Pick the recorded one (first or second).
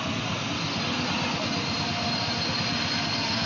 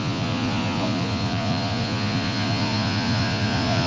first